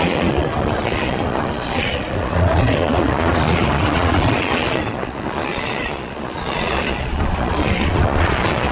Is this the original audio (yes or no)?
no